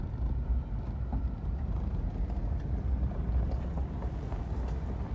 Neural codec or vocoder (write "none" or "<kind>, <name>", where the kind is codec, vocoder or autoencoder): none